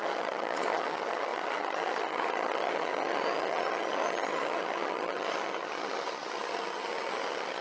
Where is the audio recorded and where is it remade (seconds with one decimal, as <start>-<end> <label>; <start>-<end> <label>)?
0.0-7.6 remade